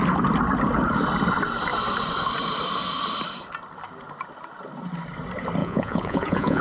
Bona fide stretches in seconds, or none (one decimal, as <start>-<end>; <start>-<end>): 0.0-5.6